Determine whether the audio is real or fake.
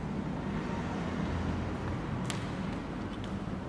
real